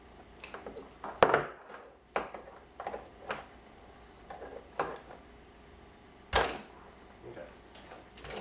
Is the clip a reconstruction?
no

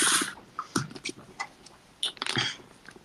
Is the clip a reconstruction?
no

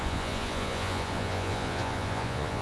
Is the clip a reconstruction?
yes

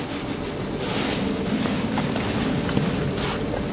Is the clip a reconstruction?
no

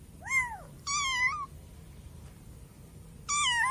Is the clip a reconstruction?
no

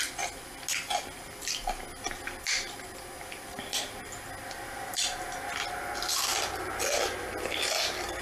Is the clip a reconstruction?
no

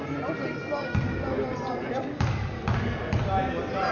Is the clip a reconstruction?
no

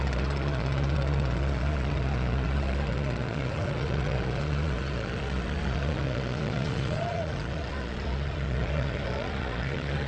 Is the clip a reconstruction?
yes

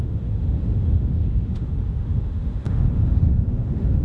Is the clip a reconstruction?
yes